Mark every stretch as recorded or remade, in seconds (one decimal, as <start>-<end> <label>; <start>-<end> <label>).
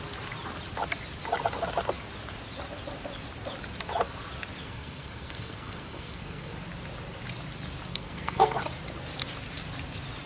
0.0-4.6 recorded; 4.6-6.5 remade; 6.5-7.9 recorded; 7.9-8.6 remade; 8.6-10.2 recorded